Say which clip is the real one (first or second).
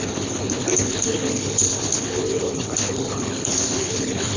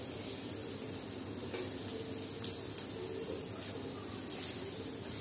second